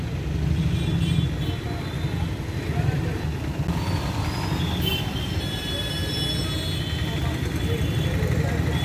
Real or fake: real